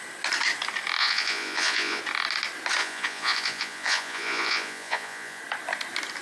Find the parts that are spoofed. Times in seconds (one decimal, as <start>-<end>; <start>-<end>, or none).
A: 1.0-2.0; 2.8-5.4